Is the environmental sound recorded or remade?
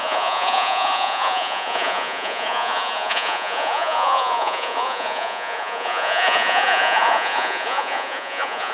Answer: remade